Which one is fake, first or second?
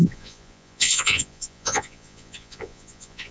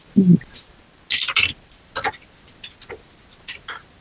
first